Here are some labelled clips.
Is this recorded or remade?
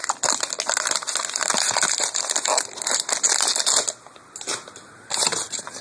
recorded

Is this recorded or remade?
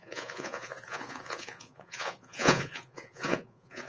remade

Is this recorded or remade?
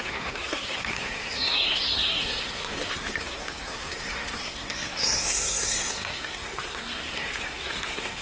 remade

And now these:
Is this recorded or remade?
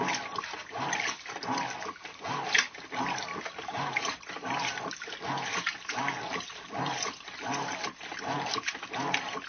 recorded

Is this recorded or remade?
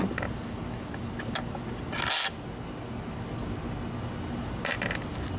recorded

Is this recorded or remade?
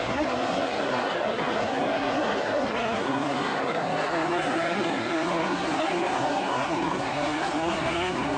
remade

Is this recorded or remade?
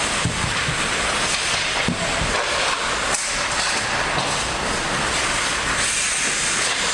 recorded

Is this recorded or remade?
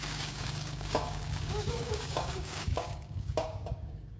remade